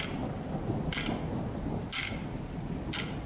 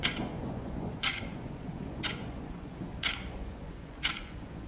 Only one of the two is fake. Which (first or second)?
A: second